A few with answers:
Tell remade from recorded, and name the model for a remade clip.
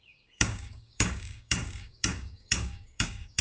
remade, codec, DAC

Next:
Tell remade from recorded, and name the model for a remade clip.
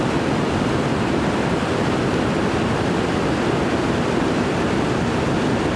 recorded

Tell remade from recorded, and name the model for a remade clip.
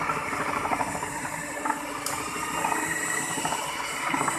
remade, vocoder, BigVGAN v2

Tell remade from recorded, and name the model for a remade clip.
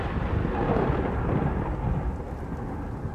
recorded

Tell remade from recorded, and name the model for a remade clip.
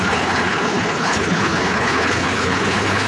remade, codec, HILCodec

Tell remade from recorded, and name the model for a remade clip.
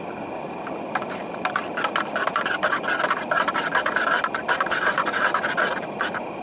recorded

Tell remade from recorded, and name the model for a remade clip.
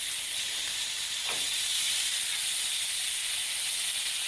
recorded